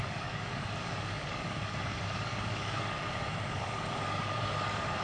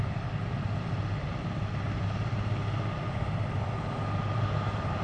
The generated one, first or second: first